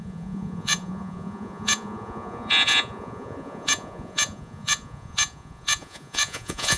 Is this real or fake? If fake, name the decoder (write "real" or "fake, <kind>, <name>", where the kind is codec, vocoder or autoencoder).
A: fake, vocoder, Vocos